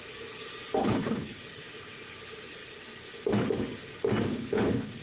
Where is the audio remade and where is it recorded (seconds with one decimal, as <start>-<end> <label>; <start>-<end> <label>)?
0.0-0.8 recorded; 0.8-1.4 remade; 1.4-4.3 recorded; 4.3-5.0 remade